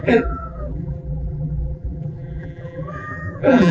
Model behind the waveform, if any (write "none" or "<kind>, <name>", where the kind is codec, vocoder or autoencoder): vocoder, BigVGAN v2